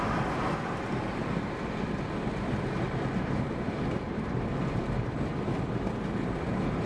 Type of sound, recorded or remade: remade